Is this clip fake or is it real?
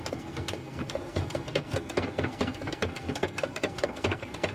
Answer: fake